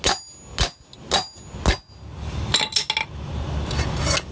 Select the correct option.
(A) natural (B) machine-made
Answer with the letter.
A